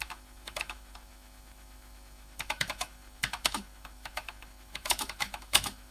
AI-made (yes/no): yes